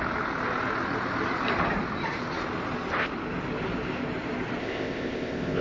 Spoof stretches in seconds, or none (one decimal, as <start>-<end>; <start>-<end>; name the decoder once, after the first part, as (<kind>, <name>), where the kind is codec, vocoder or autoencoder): 4.6-5.6 (codec, ZipCodec)